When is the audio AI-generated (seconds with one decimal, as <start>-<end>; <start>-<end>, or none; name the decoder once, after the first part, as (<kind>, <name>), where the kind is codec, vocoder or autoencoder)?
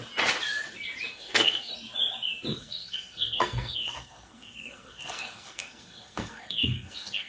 1.1-1.7 (codec, SNAC); 2.5-7.3